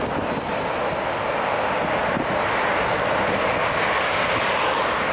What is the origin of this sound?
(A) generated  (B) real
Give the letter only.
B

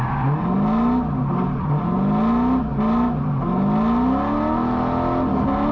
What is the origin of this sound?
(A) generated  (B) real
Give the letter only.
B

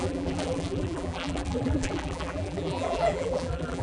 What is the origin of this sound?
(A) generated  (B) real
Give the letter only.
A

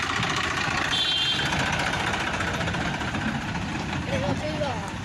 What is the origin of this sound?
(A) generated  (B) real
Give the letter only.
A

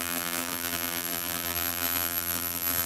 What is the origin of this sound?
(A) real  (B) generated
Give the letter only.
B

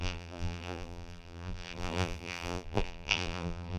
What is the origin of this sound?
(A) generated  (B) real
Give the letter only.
A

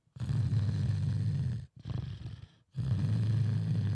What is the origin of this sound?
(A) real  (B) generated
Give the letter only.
A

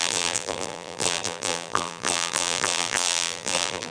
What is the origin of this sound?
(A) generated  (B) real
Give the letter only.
A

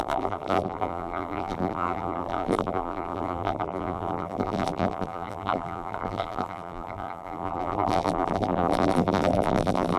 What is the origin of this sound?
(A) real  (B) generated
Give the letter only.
B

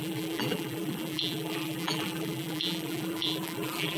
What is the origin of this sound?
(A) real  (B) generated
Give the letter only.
B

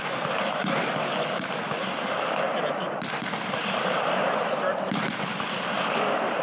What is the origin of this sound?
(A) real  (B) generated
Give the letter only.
B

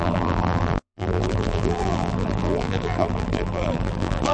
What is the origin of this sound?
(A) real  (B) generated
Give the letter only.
B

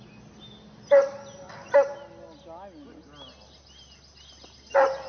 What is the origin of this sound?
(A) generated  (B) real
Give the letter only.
B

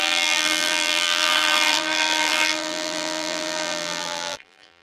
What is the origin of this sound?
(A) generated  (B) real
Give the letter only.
A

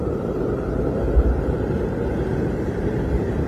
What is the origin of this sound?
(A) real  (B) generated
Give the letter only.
B